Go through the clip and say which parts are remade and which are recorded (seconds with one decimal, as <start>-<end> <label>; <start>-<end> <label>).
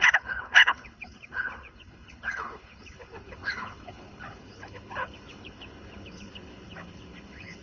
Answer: 0.0-7.6 remade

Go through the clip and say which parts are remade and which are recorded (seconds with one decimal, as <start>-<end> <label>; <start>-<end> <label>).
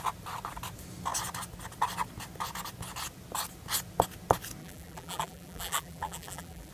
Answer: 0.0-4.6 recorded; 4.6-6.7 remade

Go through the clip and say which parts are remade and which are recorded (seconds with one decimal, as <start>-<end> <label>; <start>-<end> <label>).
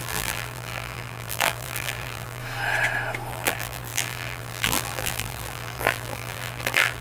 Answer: 0.0-2.4 remade; 2.4-3.3 recorded; 3.3-7.0 remade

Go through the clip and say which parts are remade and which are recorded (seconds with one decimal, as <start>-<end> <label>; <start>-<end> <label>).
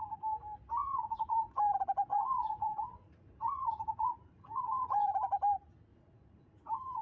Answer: 0.0-0.8 recorded; 0.8-1.6 remade; 1.6-2.1 recorded; 2.1-5.0 remade; 5.0-5.9 recorded; 5.9-7.0 remade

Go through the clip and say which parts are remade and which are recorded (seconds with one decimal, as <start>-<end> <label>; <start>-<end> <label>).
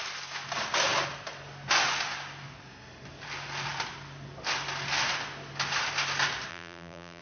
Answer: 0.0-6.5 recorded; 6.5-7.2 remade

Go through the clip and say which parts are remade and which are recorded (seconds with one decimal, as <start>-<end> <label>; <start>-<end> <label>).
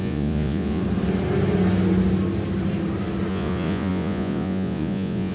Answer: 0.0-0.8 remade; 0.8-3.3 recorded; 3.3-5.3 remade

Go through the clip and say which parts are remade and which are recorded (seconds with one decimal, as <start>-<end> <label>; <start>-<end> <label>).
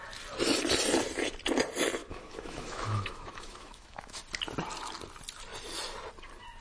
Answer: 0.0-2.0 recorded; 2.0-4.2 remade; 4.2-6.6 recorded